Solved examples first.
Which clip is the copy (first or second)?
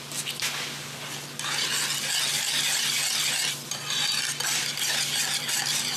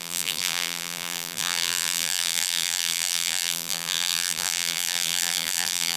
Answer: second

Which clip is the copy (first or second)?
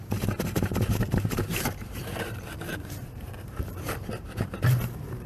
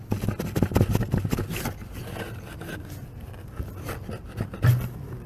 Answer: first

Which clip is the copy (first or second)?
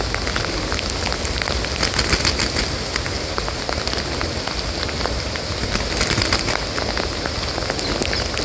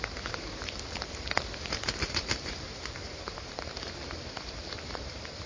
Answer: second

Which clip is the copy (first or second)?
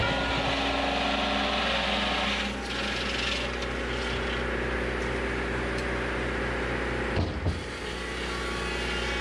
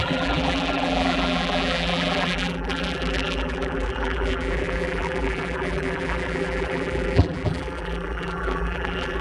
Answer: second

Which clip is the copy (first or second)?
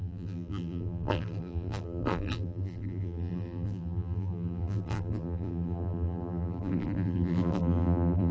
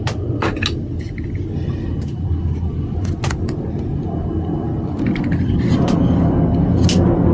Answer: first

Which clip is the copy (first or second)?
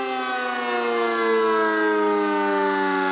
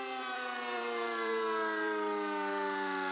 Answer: second